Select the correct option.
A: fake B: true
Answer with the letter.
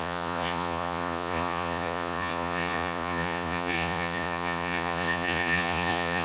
A